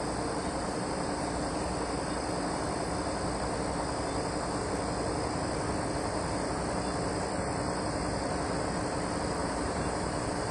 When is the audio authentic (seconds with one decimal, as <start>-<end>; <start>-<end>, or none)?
0.0-0.4; 1.7-9.4